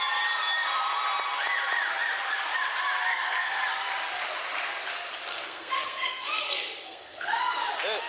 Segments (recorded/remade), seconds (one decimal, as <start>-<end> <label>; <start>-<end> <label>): 0.0-3.1 recorded; 3.1-3.6 remade; 3.6-5.3 recorded; 5.3-7.5 remade; 7.5-8.1 recorded

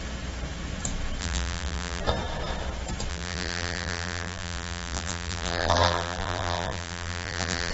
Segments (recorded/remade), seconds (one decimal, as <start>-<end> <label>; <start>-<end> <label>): 0.0-1.2 recorded; 1.2-2.0 remade; 2.0-3.1 recorded; 3.1-7.7 remade